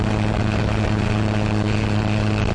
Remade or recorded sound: remade